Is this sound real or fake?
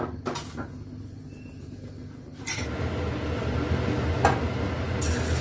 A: real